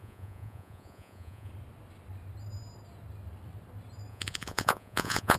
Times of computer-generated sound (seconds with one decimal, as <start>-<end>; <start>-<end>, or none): 0.0-1.5; 4.1-5.4